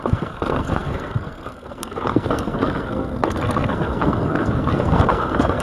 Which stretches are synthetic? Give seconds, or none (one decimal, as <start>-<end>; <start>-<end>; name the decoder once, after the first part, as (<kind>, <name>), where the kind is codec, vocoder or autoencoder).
0.0-5.6 (codec, SNAC)